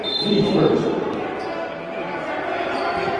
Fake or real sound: real